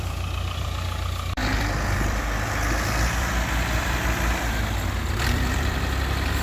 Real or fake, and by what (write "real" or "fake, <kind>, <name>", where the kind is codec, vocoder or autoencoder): fake, vocoder, BigVGAN v2